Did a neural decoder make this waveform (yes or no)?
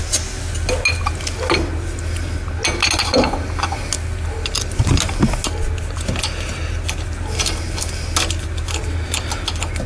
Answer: no